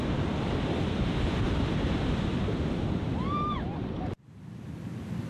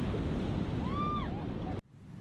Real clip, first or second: second